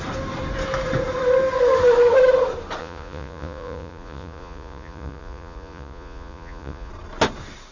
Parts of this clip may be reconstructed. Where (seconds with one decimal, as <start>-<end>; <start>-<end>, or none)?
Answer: 2.8-6.9